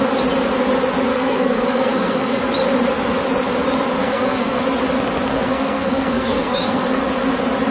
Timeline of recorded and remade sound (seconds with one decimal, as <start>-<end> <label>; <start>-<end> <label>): 0.0-1.1 recorded; 1.1-2.4 remade; 2.4-4.0 recorded; 4.0-4.6 remade; 4.6-5.3 recorded; 5.3-7.0 remade; 7.0-7.7 recorded